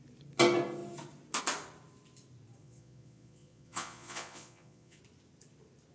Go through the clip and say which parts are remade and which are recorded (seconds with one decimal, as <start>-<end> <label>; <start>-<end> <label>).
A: 0.0-2.6 recorded; 2.6-5.0 remade; 5.0-5.9 recorded